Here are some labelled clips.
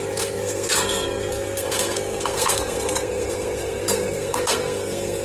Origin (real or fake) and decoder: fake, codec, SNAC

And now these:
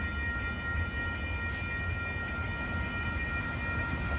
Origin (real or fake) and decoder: real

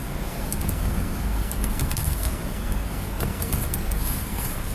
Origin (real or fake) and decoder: fake, codec, SNAC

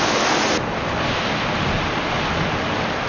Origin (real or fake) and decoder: real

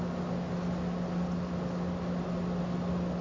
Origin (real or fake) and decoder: real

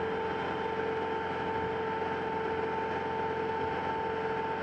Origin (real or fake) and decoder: real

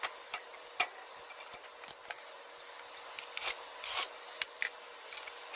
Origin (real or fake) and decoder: real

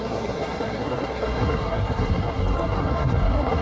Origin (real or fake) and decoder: fake, codec, SNAC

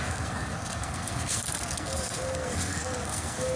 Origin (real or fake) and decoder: fake, codec, SNAC